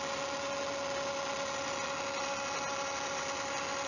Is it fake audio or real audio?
real